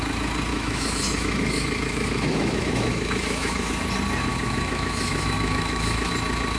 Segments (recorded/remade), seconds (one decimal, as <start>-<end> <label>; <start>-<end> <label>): 0.0-0.5 recorded; 0.5-3.7 remade; 3.7-4.3 recorded; 4.3-6.1 remade; 6.1-6.6 recorded